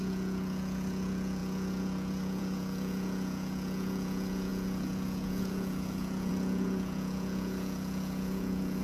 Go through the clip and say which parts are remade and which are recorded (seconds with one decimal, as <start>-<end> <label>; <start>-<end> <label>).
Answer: 0.0-8.8 remade